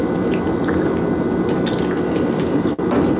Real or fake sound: real